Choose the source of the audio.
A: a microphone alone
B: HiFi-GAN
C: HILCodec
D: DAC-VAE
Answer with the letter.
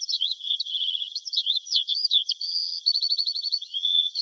B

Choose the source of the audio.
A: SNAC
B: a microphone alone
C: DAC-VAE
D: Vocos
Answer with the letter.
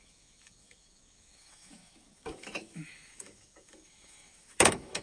C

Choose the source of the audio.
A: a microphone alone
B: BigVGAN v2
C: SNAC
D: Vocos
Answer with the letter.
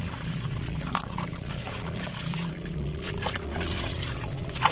D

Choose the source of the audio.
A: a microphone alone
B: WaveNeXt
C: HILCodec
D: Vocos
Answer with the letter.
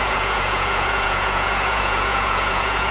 D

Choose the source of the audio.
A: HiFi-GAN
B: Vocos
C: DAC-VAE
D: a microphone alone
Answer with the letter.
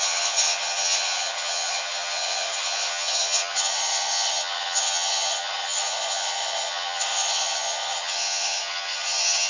A